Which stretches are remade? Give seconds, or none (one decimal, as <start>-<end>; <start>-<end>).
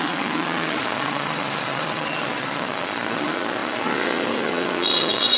0.0-5.4